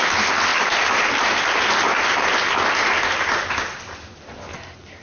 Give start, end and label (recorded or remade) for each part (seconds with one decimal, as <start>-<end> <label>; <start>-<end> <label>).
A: 0.0-5.0 recorded

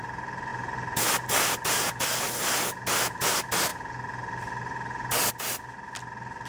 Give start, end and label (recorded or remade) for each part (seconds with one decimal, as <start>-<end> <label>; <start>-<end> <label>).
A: 0.0-6.5 recorded

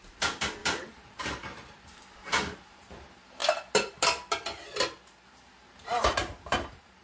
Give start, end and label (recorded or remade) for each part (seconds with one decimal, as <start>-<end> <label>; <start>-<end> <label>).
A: 0.0-3.4 remade; 3.4-5.1 recorded; 5.1-7.0 remade